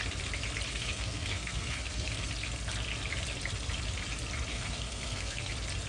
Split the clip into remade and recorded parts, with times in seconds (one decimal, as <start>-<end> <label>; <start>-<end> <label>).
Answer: 0.0-0.7 recorded; 0.7-2.3 remade; 2.3-4.5 recorded; 4.5-5.5 remade; 5.5-5.9 recorded